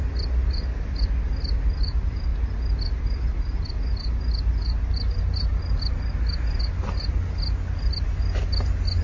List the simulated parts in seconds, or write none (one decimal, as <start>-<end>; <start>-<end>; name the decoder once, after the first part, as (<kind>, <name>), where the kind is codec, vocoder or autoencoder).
none